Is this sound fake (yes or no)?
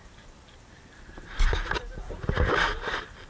yes